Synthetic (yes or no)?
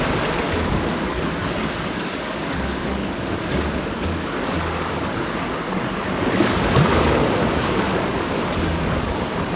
yes